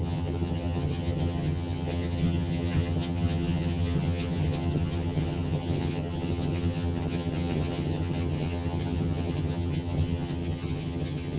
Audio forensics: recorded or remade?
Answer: remade